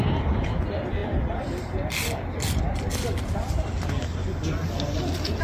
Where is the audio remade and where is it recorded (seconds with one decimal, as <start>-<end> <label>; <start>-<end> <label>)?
0.0-5.4 recorded